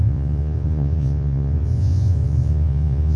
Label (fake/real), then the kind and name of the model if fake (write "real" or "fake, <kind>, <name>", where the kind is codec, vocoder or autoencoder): fake, vocoder, Vocos